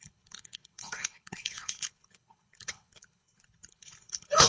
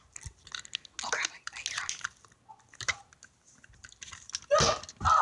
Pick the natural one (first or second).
second